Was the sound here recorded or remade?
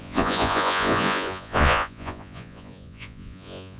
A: remade